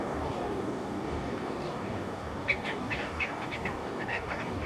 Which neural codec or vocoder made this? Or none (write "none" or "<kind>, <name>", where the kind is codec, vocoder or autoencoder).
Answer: codec, DAC